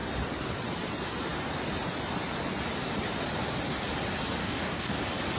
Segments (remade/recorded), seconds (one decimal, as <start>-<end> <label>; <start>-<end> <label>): 0.0-4.4 recorded; 4.4-4.9 remade; 4.9-5.4 recorded